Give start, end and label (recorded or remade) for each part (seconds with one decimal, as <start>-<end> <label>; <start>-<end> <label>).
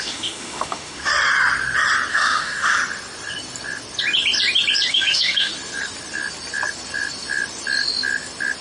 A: 0.0-1.1 remade; 1.1-2.1 recorded; 2.1-2.8 remade; 2.8-4.9 recorded; 4.9-5.5 remade; 5.5-8.6 recorded